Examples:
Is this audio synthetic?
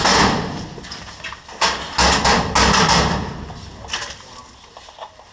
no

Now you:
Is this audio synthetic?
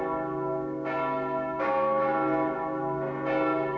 no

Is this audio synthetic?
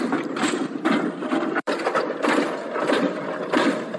yes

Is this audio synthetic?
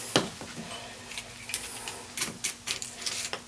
no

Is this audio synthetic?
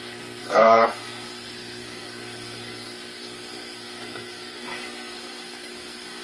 yes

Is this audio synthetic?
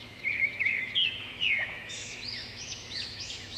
yes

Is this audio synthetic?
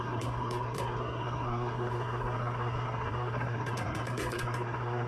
yes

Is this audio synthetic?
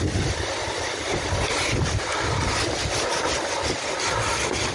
no